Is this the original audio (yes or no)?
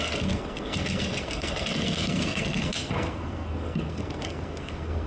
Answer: no